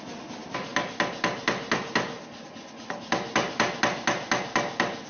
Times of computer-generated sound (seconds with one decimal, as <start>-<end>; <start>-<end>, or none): none